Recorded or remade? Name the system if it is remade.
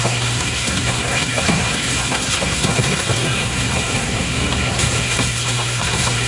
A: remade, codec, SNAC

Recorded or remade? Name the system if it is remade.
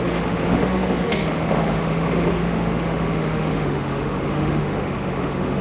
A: remade, autoencoder, DAC-VAE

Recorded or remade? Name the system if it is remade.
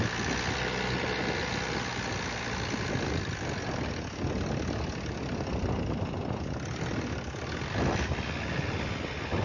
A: recorded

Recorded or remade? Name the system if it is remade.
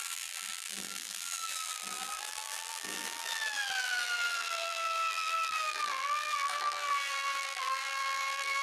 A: remade, vocoder, BigVGAN v2